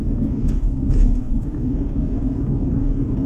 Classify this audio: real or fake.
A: fake